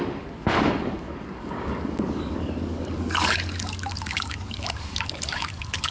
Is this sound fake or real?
fake